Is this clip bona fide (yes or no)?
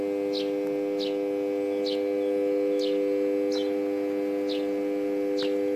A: yes